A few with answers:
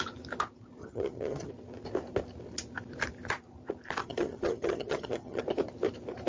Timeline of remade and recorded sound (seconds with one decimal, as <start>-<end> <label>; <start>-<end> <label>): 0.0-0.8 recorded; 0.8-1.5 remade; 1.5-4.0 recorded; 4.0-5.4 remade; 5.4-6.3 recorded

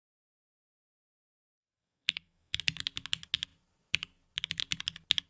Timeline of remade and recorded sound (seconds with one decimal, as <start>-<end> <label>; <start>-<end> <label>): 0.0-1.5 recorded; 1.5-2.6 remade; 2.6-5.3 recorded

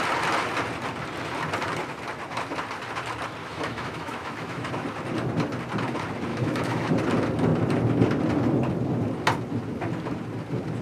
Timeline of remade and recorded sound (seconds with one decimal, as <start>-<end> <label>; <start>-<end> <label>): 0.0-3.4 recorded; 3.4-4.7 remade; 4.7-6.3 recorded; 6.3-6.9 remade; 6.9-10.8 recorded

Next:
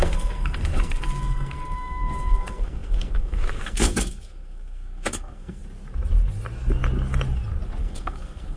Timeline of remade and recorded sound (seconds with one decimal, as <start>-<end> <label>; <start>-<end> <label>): 0.0-5.6 remade; 5.6-7.8 recorded; 7.8-8.6 remade

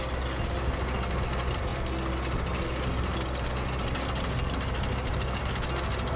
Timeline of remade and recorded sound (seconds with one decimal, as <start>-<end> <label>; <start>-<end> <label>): 0.0-6.2 recorded

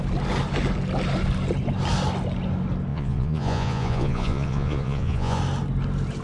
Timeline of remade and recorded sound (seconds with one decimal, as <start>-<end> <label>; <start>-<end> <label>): 0.0-2.9 recorded; 2.9-5.4 remade; 5.4-6.2 recorded